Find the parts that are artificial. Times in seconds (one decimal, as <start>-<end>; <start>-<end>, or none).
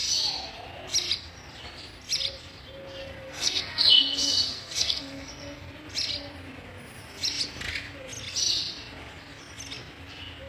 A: 3.0-5.7